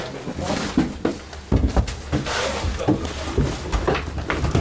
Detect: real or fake real